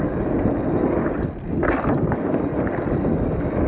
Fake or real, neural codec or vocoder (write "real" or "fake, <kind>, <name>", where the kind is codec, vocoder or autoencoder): real